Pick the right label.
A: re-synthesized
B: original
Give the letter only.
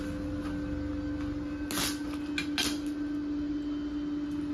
B